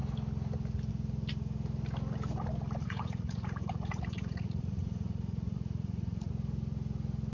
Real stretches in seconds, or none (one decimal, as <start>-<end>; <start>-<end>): 0.0-2.8; 6.3-7.3

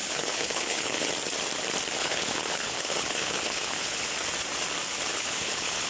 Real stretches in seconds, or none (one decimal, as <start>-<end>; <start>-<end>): 1.1-2.0; 4.1-5.1

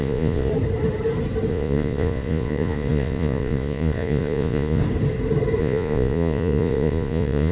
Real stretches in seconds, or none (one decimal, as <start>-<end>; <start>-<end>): 0.5-1.5; 4.8-5.6

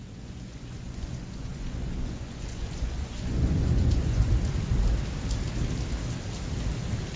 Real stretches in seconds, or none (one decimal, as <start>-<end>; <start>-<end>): 4.3-7.2

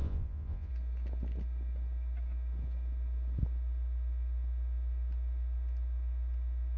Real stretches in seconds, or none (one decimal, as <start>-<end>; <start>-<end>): 0.7-6.8

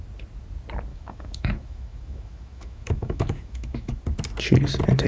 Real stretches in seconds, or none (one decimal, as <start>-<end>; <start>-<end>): 0.0-0.9; 4.0-5.1

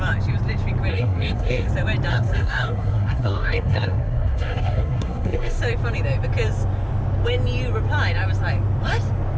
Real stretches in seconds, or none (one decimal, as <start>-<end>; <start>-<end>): 0.0-0.9; 1.7-2.1; 5.6-9.4

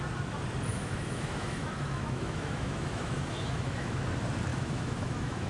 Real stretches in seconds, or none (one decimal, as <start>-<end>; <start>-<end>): 0.0-0.7; 4.0-4.5